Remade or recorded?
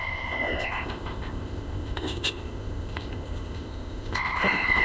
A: remade